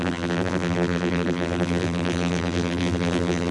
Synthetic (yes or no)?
yes